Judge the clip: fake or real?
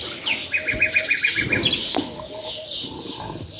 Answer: real